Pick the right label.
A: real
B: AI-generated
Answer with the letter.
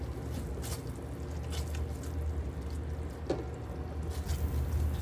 A